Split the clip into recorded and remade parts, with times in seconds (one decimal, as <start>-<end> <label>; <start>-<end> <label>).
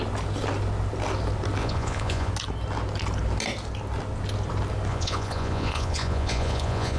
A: 0.0-1.6 recorded; 1.6-2.3 remade; 2.3-4.9 recorded; 4.9-7.0 remade